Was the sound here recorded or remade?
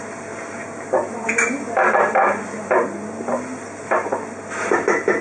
recorded